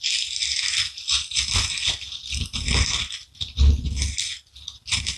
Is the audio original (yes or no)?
yes